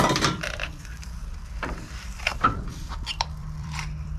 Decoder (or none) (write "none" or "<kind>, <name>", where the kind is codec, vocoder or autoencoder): vocoder, BigVGAN v2